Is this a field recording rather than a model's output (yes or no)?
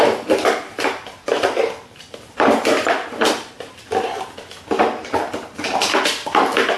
yes